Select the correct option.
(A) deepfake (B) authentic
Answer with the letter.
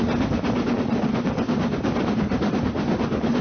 B